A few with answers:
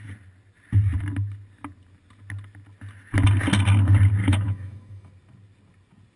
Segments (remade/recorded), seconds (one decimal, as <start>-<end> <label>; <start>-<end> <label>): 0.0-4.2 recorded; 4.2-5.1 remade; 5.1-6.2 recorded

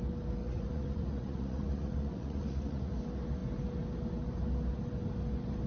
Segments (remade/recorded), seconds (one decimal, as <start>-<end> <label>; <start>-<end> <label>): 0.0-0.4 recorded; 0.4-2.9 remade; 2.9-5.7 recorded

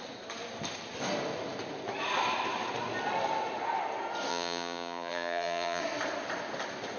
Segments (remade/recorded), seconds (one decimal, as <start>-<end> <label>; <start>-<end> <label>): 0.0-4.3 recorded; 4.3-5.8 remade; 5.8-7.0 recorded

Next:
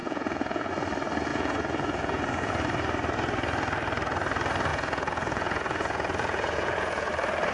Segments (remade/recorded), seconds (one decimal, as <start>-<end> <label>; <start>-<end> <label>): 0.0-0.7 remade; 0.7-1.3 recorded; 1.3-2.5 remade; 2.5-4.7 recorded; 4.7-7.1 remade; 7.1-7.5 recorded

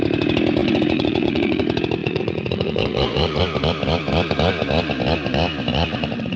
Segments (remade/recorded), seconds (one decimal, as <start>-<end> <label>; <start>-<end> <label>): 0.0-0.6 recorded; 0.6-1.6 remade; 1.6-2.0 recorded; 2.0-3.4 remade; 3.4-5.7 recorded; 5.7-6.4 remade